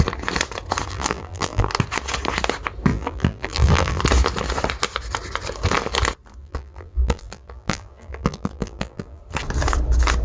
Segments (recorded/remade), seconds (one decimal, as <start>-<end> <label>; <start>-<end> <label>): 0.0-0.9 recorded; 0.9-1.7 remade; 1.7-2.9 recorded; 2.9-4.0 remade; 4.0-6.4 recorded; 6.4-9.2 remade; 9.2-10.2 recorded